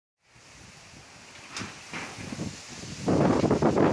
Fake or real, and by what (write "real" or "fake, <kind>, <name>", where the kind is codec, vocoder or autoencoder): real